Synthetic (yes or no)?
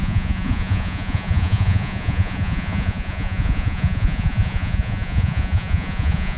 yes